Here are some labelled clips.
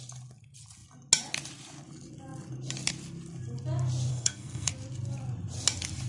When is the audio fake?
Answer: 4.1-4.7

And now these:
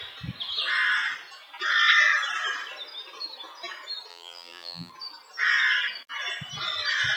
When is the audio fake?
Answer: 4.1-4.9

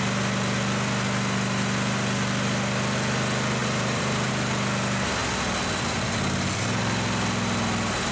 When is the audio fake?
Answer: 3.6-4.3

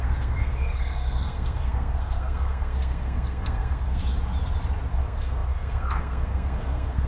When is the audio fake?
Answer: 0.0-4.0; 4.9-7.1

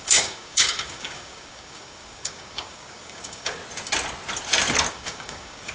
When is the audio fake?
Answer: 0.0-3.6; 4.9-5.7

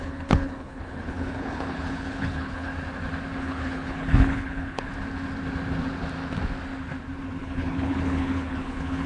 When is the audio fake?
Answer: 0.0-2.7; 3.4-4.9; 7.4-9.1

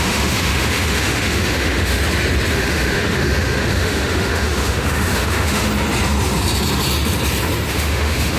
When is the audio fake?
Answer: 0.0-2.0; 2.5-5.7; 7.7-8.4

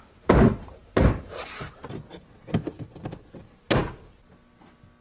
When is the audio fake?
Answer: none